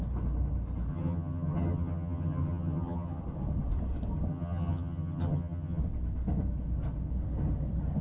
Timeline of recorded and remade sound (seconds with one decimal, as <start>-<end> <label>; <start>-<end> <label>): 0.0-0.9 recorded; 0.9-3.2 remade; 3.2-4.3 recorded; 4.3-5.8 remade; 5.8-8.0 recorded